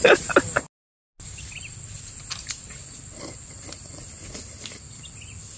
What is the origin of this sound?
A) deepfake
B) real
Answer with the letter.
B